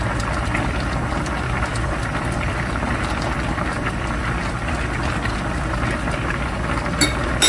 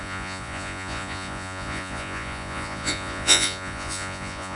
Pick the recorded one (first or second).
first